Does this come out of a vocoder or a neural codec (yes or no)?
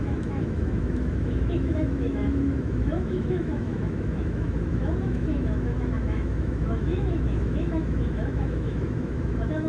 yes